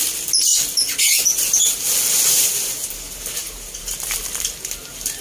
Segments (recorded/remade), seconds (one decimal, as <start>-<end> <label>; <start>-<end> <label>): 0.0-3.4 recorded; 3.4-4.2 remade; 4.2-5.2 recorded